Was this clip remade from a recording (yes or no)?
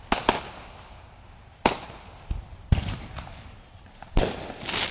no